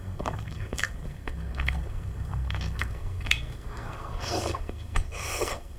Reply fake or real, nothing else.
fake